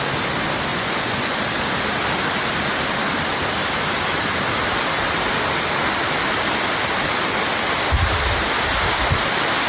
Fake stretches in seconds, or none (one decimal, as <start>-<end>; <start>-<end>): 0.7-1.4